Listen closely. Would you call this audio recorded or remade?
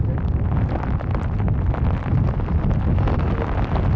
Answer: recorded